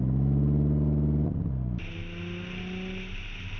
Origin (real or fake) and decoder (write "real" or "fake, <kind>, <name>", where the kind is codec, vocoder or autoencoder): real